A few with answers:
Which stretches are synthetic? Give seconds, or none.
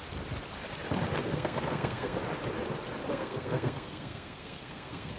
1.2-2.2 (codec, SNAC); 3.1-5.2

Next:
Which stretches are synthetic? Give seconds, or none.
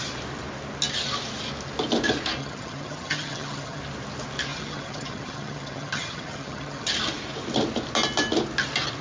2.4-3.8 (vocoder, HiFi-GAN); 4.5-6.9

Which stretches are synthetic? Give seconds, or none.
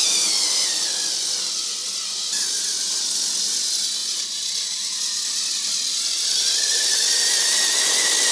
4.0-4.9 (vocoder, BigVGAN v2)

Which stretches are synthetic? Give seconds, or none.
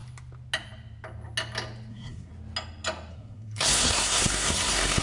1.9-2.3 (codec, SNAC); 3.1-5.0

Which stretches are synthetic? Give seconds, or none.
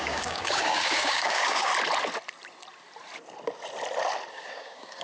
0.0-1.7 (codec, DAC); 4.3-5.0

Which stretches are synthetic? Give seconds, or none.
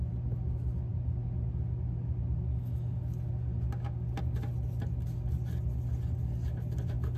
none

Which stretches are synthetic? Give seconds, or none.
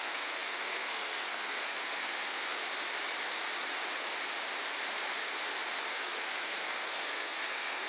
0.0-2.6 (codec, SNAC); 5.9-7.9